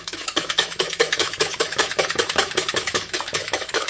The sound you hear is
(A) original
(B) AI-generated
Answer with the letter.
B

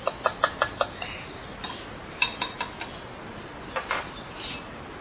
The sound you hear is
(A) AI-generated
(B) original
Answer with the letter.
B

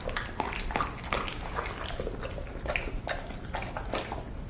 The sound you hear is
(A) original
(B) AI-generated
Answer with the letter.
A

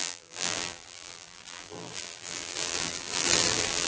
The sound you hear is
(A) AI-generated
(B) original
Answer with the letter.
A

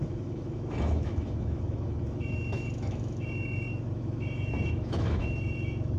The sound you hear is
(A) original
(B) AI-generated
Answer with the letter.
B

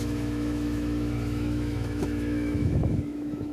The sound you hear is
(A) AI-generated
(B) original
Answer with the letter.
A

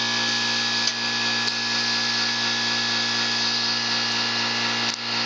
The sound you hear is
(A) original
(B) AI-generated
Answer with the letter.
A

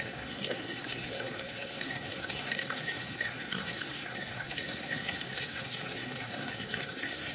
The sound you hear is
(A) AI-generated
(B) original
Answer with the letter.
A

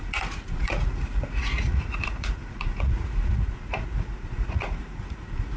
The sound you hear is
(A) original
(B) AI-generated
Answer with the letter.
B